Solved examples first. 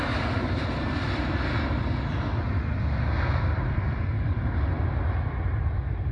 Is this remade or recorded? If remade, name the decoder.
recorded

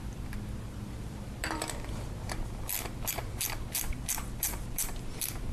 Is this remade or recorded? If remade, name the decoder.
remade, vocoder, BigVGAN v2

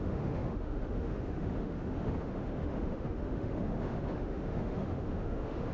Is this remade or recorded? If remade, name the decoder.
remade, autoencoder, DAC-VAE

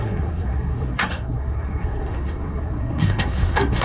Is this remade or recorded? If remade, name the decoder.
remade, codec, SNAC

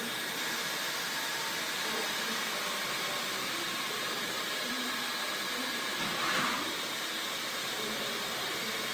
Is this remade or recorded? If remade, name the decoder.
remade, vocoder, BigVGAN v2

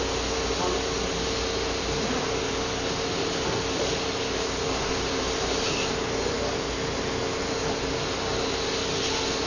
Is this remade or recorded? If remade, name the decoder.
recorded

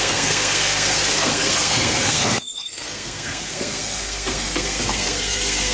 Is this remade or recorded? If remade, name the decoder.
remade, codec, SNAC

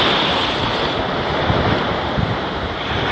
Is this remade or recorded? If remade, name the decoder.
remade, vocoder, BigVGAN v2